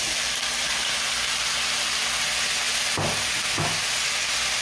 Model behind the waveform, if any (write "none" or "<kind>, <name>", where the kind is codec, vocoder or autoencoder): none